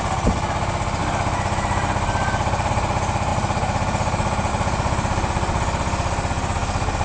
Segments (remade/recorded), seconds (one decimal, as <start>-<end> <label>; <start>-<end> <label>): 0.0-7.0 recorded